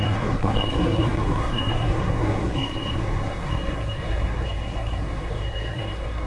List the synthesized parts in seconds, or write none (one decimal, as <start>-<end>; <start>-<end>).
0.0-6.3